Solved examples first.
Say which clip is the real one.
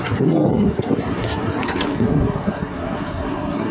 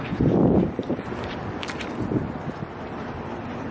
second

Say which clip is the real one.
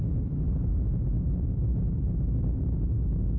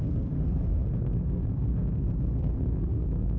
first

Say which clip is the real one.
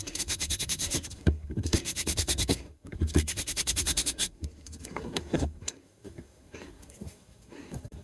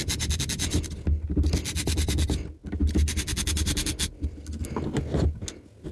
second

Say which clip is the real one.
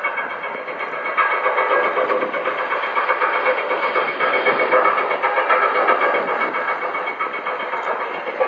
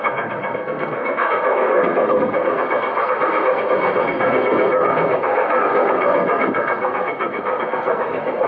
first